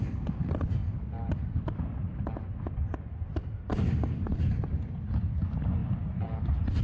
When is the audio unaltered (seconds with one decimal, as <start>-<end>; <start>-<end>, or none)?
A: 0.0-6.8